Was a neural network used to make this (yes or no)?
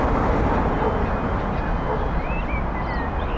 no